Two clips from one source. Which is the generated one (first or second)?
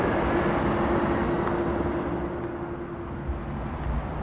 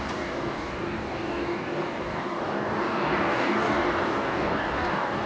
second